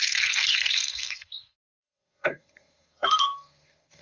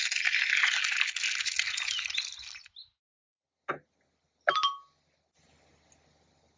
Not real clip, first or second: first